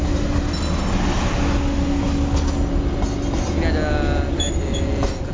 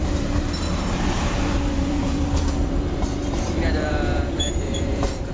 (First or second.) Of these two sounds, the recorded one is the first